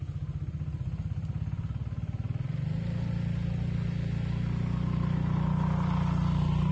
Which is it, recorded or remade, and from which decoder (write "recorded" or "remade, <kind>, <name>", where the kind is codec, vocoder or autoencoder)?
recorded